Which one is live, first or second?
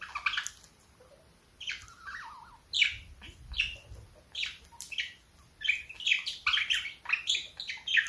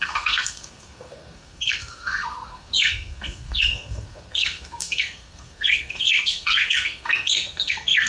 first